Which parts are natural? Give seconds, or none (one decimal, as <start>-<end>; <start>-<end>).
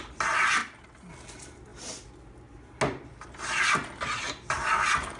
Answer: 0.0-5.2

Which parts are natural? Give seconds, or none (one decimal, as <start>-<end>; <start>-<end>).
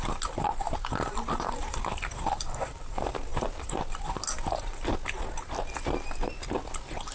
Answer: 0.0-7.1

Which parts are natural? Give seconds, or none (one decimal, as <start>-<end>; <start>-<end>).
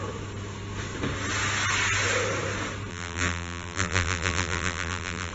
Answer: 0.0-2.9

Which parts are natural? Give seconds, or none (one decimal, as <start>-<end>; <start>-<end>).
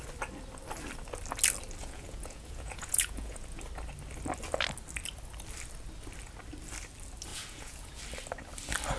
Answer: 0.0-1.8; 3.6-7.3; 8.0-9.0